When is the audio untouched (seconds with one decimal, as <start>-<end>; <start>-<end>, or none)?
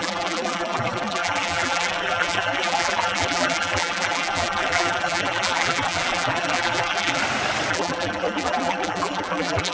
7.2-7.7